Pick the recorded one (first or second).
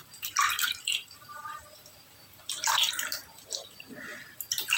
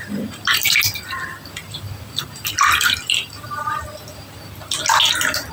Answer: second